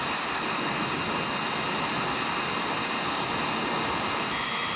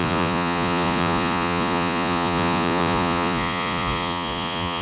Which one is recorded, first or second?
first